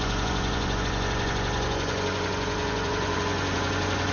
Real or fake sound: fake